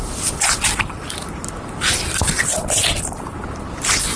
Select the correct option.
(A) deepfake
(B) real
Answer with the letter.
B